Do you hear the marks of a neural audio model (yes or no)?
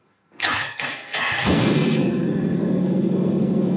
yes